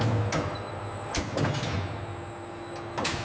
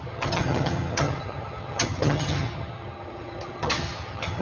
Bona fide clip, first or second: first